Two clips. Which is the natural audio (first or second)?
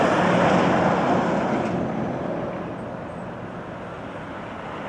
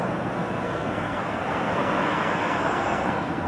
first